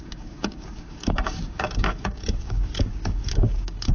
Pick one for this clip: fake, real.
fake